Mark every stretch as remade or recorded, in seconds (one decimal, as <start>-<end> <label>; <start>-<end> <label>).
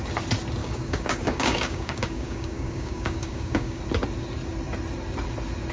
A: 0.0-0.6 recorded; 0.6-3.8 remade; 3.8-5.7 recorded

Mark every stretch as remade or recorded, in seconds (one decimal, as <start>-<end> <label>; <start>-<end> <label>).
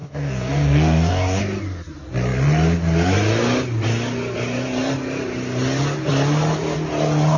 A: 0.0-1.4 remade; 1.4-7.4 recorded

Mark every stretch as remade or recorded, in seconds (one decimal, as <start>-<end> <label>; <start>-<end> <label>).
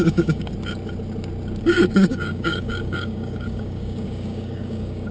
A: 0.0-0.5 remade; 0.5-1.6 recorded; 1.6-5.1 remade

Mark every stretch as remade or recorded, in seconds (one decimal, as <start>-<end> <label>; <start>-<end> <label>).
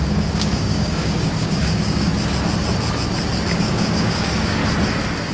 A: 0.0-2.1 remade; 2.1-3.6 recorded; 3.6-4.6 remade; 4.6-5.3 recorded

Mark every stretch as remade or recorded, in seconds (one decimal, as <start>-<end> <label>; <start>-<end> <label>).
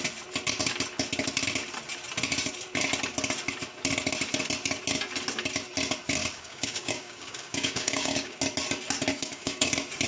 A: 0.0-6.2 recorded; 6.2-8.4 remade; 8.4-9.1 recorded; 9.1-9.7 remade; 9.7-10.1 recorded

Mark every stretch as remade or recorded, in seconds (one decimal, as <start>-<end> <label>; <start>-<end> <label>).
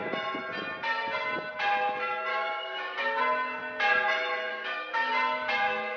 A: 0.0-2.3 recorded; 2.3-3.2 remade; 3.2-4.5 recorded; 4.5-5.1 remade; 5.1-6.0 recorded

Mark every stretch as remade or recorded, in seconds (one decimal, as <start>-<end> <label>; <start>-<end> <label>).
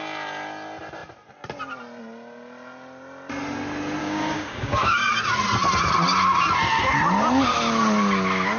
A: 0.0-4.0 recorded; 4.0-5.1 remade; 5.1-8.6 recorded